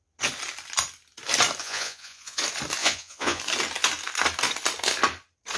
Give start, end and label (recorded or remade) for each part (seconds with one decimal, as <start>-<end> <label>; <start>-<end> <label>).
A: 0.0-1.6 recorded; 1.6-2.4 remade; 2.4-2.8 recorded; 2.8-3.4 remade; 3.4-5.6 recorded